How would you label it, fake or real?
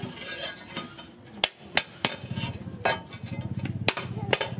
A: real